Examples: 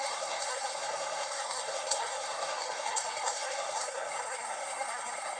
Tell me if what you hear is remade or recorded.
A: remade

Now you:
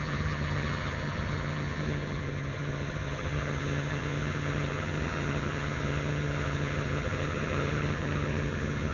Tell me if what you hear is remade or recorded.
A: remade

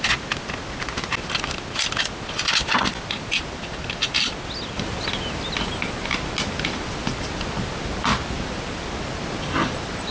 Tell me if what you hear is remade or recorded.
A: recorded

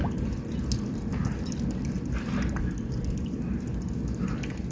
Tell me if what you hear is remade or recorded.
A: recorded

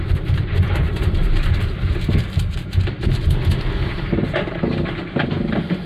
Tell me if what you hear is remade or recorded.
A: remade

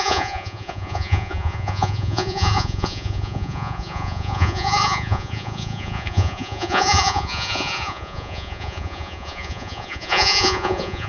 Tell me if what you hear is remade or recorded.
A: remade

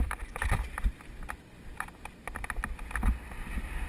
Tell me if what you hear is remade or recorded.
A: recorded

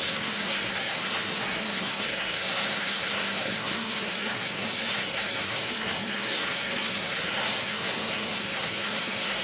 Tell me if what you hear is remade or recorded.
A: remade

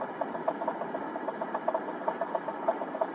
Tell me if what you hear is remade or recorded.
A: recorded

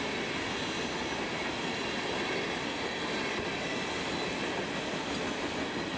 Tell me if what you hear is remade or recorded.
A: recorded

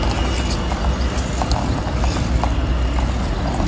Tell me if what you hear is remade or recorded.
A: recorded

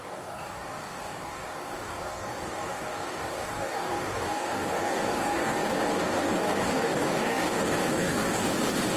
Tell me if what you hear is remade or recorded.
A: remade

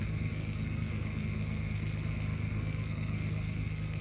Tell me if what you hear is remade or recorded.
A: remade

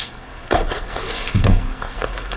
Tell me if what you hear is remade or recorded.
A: remade